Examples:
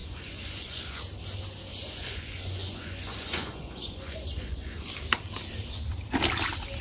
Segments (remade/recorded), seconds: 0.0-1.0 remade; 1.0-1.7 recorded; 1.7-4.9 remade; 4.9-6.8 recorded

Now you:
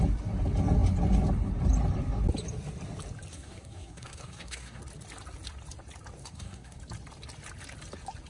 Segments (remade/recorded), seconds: 0.0-3.3 recorded; 3.3-4.8 remade; 4.8-6.2 recorded; 6.2-6.8 remade; 6.8-8.3 recorded

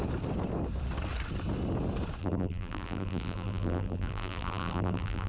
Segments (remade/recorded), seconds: 0.0-2.2 recorded; 2.2-5.3 remade

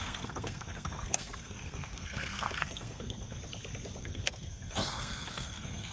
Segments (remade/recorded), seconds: 0.0-3.4 remade; 3.4-4.0 recorded; 4.0-5.9 remade